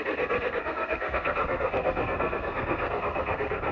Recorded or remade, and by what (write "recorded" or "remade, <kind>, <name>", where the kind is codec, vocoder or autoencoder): remade, codec, SNAC